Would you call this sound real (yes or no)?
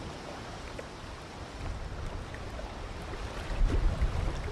yes